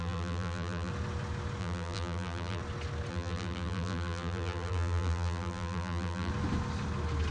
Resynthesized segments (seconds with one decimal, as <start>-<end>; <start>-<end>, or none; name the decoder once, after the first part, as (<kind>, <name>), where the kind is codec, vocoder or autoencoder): 0.0-0.9 (vocoder, BigVGAN v2); 1.6-2.6; 3.1-6.3